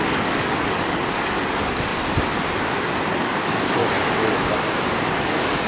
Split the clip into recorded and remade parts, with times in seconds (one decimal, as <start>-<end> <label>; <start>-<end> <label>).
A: 0.0-1.9 remade; 1.9-3.2 recorded; 3.2-3.8 remade; 3.8-5.1 recorded; 5.1-5.7 remade